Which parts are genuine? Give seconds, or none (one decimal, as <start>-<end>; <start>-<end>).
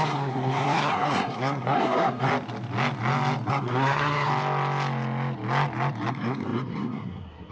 2.3-3.5; 4.3-6.1